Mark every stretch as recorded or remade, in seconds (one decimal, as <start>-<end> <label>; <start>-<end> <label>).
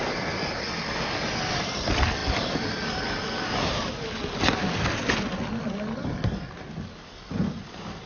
0.0-8.1 recorded